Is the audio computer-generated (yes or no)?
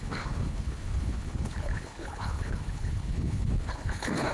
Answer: yes